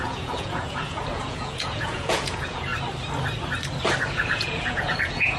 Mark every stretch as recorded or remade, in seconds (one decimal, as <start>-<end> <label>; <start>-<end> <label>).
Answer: 0.0-2.7 remade; 2.7-4.0 recorded; 4.0-5.4 remade